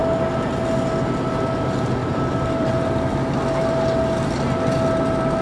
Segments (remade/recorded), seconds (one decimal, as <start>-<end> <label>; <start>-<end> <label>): 0.0-2.0 recorded; 2.0-2.8 remade; 2.8-5.4 recorded